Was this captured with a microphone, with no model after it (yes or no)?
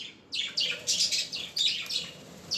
yes